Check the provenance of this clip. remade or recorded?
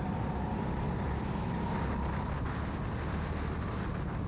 recorded